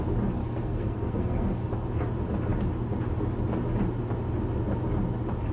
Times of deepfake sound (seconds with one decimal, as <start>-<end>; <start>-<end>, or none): 0.4-1.7